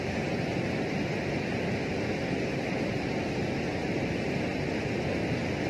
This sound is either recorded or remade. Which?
recorded